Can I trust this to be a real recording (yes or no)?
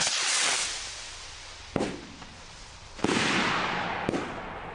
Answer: yes